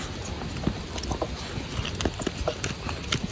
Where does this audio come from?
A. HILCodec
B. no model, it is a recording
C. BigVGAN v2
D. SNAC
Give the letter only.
B